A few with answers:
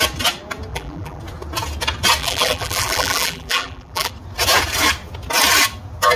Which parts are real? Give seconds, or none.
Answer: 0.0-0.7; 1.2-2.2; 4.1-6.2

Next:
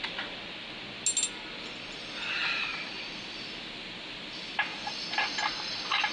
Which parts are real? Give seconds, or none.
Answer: 0.0-4.4; 4.9-6.1

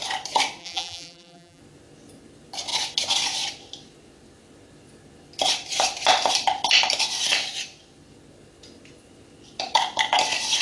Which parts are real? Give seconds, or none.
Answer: 0.0-0.6; 1.6-10.6